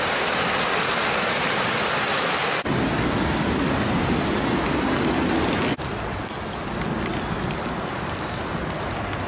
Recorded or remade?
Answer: recorded